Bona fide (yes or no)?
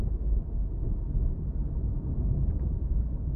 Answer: yes